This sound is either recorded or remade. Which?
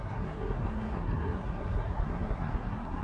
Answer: remade